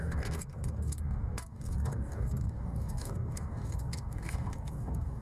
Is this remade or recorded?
remade